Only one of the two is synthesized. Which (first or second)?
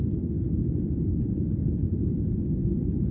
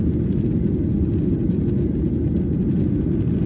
first